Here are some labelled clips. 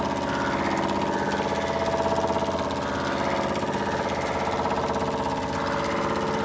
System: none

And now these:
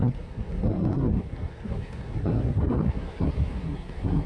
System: codec, SNAC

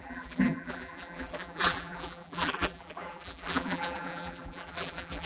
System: vocoder, BigVGAN v2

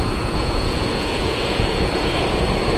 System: vocoder, Vocos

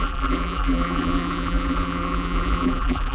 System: vocoder, BigVGAN v2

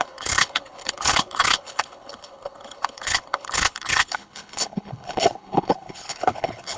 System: codec, HILCodec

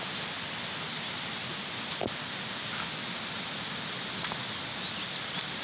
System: none